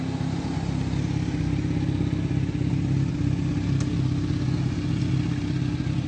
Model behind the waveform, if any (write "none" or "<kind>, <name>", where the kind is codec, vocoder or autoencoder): none